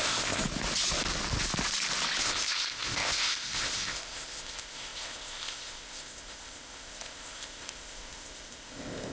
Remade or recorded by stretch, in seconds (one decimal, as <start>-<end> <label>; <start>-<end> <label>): 0.0-0.4 remade; 0.4-2.2 recorded; 2.2-9.1 remade